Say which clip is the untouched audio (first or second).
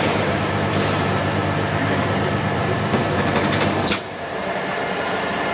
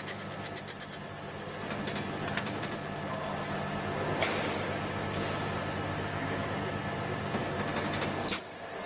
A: second